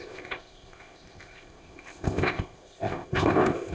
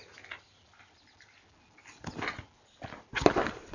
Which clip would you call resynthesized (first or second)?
first